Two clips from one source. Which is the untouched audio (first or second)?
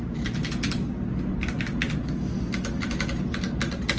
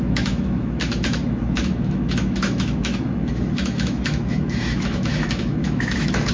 first